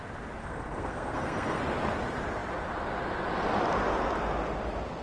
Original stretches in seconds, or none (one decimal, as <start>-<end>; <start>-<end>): 0.0-0.4; 1.6-5.0